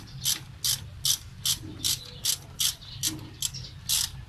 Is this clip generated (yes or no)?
no